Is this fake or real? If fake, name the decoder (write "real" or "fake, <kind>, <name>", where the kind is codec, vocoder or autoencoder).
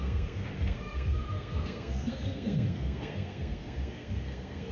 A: fake, codec, SNAC